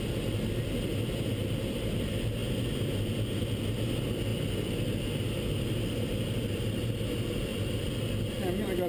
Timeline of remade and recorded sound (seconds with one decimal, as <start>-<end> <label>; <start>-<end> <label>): 0.0-8.9 recorded